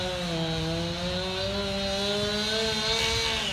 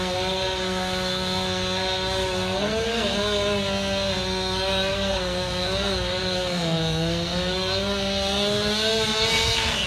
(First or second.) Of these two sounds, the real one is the first